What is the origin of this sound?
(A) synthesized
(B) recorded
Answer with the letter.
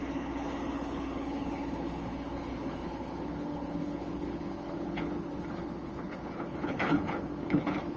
A